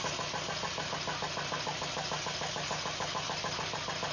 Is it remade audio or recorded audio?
recorded